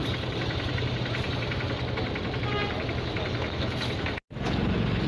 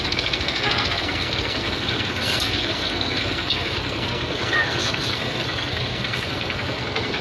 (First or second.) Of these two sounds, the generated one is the second